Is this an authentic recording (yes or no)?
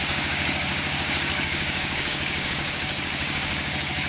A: no